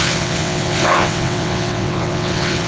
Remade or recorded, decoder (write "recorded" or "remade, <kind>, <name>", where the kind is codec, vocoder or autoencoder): remade, vocoder, WaveNeXt